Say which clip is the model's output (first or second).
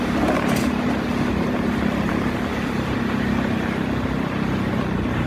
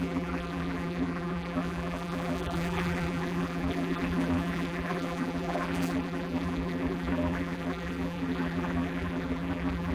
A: second